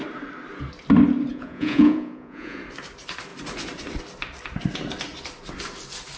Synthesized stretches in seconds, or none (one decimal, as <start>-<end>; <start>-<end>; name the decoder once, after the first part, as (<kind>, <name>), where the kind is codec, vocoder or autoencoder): 1.3-2.6 (vocoder, Vocos)